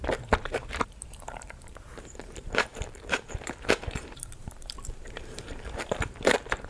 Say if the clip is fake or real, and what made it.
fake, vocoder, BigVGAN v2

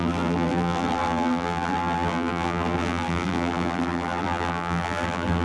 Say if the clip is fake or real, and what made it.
fake, vocoder, BigVGAN v2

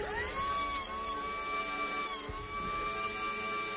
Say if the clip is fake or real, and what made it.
real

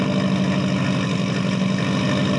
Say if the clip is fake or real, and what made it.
real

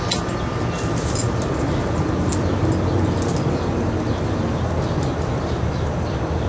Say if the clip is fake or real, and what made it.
real